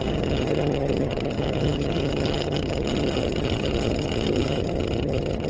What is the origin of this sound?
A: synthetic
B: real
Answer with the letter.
A